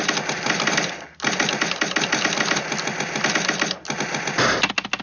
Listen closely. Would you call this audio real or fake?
real